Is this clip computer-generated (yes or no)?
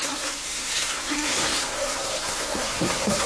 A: yes